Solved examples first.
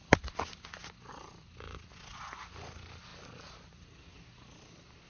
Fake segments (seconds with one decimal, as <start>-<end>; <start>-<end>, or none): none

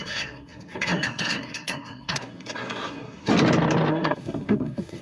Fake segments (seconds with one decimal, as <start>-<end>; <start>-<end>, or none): 0.0-3.3; 3.9-5.0

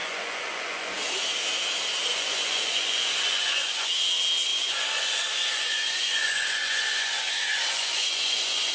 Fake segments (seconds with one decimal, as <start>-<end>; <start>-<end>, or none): 0.0-0.9; 2.1-3.9; 4.5-8.7

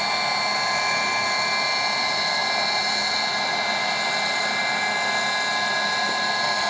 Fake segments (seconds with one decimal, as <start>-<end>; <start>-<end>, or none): none

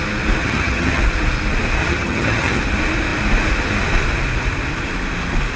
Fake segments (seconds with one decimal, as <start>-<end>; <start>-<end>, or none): 0.4-1.0; 1.8-2.6

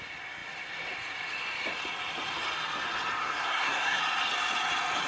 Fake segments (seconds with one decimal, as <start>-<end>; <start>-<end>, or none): 3.2-4.0